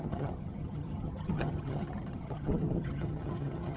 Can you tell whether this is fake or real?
fake